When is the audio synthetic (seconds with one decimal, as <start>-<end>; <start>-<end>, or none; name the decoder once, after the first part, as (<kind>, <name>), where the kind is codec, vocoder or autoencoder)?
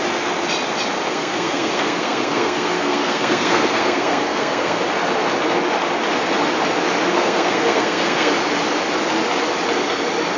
1.1-4.8 (codec, SNAC); 7.1-8.3